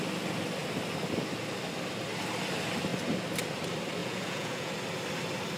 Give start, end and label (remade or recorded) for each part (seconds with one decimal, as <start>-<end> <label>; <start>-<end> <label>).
0.0-4.0 recorded; 4.0-4.7 remade; 4.7-5.6 recorded